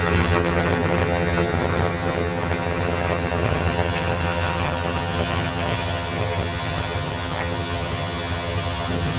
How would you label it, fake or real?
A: fake